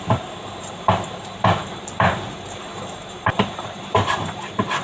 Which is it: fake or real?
fake